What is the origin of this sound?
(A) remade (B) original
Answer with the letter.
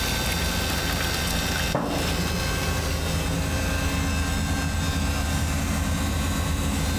B